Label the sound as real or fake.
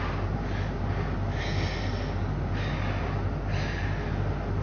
real